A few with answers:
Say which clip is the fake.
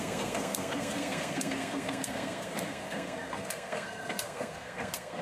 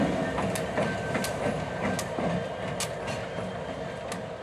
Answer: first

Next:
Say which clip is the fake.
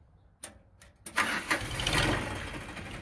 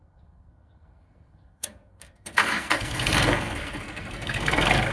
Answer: second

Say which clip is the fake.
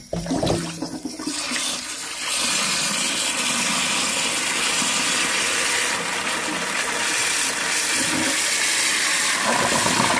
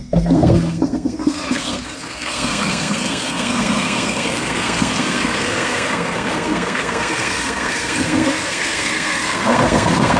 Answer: second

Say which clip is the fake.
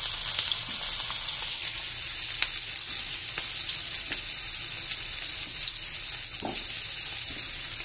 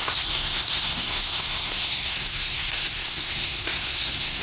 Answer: second